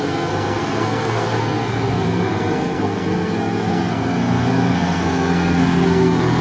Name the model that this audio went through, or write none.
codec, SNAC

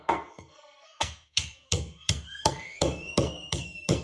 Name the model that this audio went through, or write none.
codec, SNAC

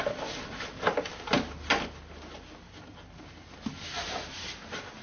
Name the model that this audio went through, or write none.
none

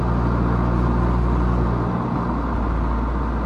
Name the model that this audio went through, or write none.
none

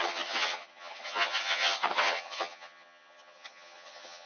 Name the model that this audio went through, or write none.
vocoder, HiFi-GAN